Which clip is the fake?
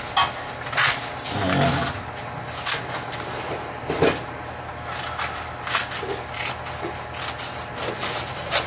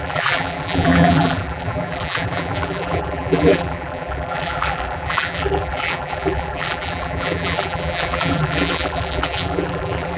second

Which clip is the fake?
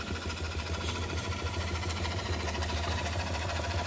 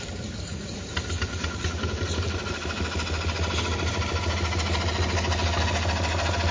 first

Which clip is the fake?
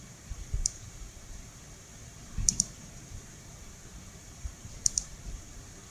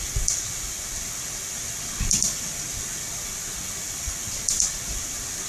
first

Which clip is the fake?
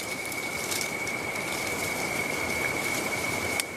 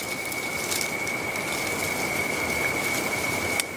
first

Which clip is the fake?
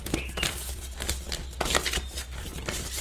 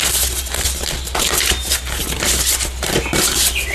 first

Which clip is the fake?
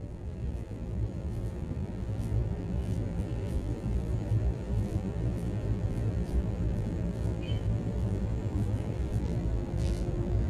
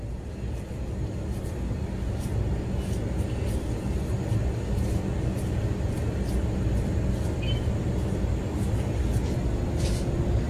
first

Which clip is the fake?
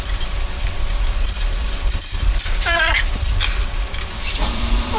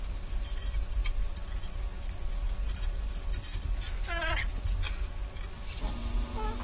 first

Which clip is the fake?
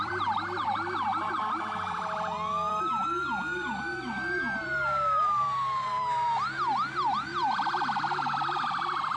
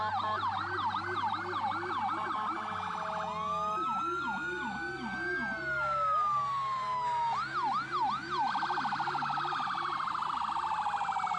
first